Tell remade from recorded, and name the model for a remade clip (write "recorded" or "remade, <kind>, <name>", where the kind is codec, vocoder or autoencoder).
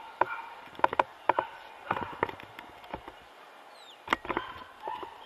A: recorded